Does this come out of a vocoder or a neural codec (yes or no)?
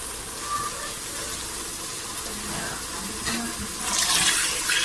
no